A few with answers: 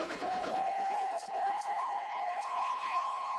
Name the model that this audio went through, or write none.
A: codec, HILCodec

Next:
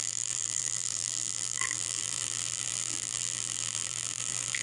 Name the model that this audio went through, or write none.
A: vocoder, BigVGAN v2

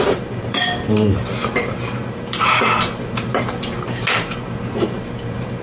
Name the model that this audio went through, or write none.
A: vocoder, BigVGAN v2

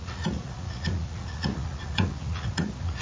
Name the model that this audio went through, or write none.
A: vocoder, Vocos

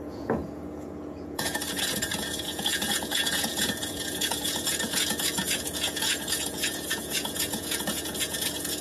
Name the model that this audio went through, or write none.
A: vocoder, Vocos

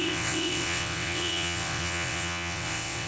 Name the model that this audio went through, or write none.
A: vocoder, WaveNeXt